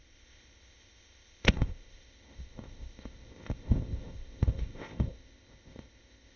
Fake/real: fake